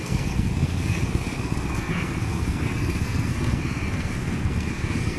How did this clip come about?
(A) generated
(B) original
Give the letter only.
A